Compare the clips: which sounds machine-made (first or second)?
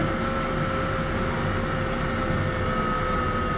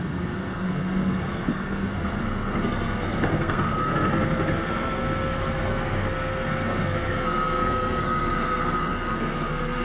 second